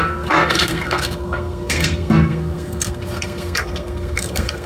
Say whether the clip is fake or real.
fake